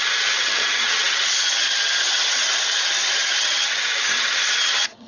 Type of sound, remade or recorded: remade